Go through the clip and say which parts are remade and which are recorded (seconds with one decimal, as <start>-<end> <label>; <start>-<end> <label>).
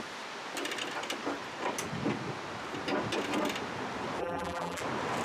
0.0-4.2 recorded; 4.2-4.8 remade; 4.8-5.2 recorded